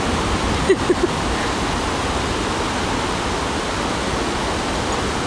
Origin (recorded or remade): recorded